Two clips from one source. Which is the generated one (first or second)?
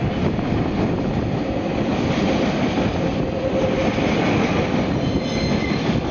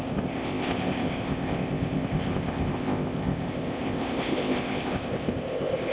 second